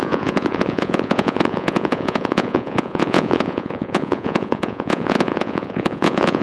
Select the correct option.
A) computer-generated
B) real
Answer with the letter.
A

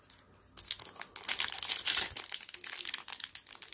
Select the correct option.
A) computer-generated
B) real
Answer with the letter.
B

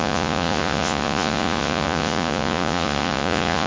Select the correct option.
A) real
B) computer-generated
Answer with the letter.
B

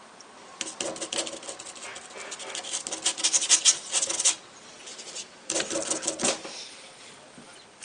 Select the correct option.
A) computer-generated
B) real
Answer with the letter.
B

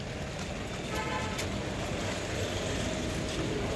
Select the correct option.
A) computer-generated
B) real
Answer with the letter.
B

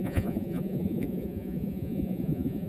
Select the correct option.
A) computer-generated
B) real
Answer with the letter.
A